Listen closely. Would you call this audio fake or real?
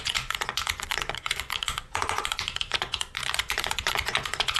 fake